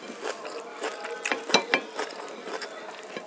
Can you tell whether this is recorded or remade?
recorded